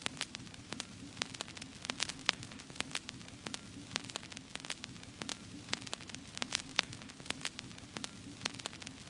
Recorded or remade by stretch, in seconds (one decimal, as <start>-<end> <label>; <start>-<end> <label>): 0.0-1.3 remade; 1.3-5.3 recorded; 5.3-6.6 remade; 6.6-9.1 recorded